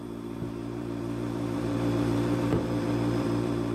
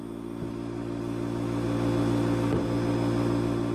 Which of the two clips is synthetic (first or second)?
first